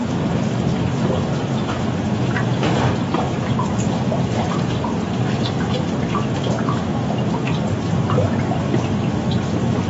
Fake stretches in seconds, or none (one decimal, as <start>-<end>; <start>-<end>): none

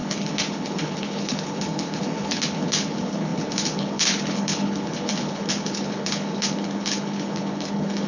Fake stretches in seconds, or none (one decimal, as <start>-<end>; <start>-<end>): 0.0-8.1

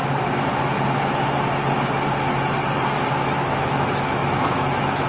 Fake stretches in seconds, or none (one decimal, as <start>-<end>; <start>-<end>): 3.1-5.1

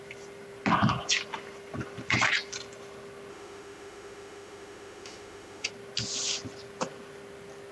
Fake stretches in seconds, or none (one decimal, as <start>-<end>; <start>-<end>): 3.3-5.7

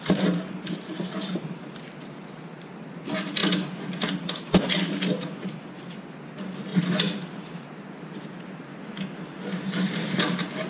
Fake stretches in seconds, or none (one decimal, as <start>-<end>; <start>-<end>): none

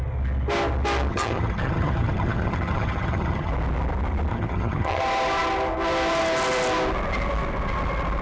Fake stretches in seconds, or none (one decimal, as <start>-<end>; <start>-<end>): 1.1-3.5; 4.3-5.0

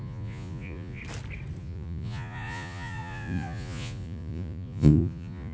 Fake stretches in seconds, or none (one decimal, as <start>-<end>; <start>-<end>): 0.0-1.0; 1.6-5.5